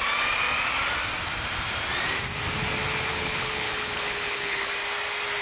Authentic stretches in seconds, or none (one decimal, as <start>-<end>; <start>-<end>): 0.0-3.1; 4.7-5.4